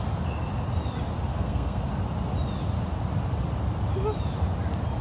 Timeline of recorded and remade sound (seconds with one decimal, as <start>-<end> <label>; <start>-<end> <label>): 0.0-1.3 recorded; 1.3-1.8 remade; 1.8-5.0 recorded